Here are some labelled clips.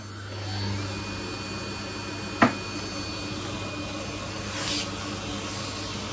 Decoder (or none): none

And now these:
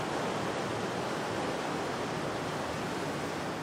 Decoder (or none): none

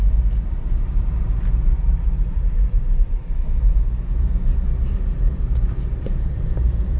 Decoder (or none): vocoder, BigVGAN v2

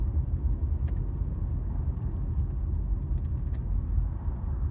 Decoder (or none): none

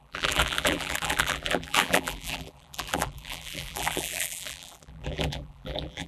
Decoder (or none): vocoder, BigVGAN v2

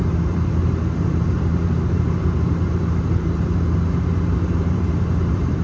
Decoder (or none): vocoder, BigVGAN v2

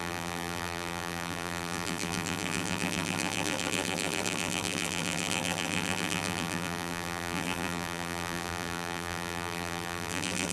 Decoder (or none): vocoder, BigVGAN v2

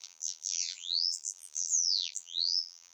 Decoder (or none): vocoder, BigVGAN v2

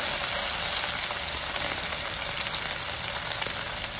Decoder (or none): none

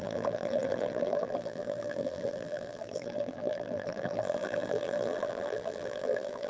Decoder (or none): vocoder, BigVGAN v2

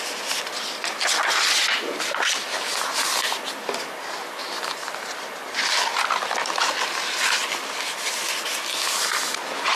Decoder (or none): vocoder, BigVGAN v2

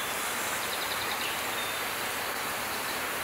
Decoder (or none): vocoder, BigVGAN v2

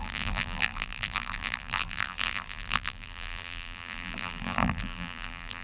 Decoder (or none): vocoder, BigVGAN v2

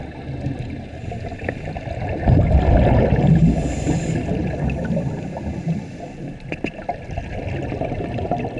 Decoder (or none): none